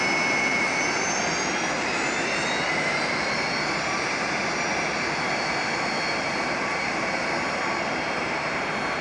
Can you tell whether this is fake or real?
fake